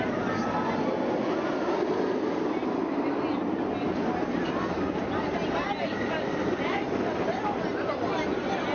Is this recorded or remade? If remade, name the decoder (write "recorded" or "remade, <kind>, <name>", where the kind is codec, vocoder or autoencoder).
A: recorded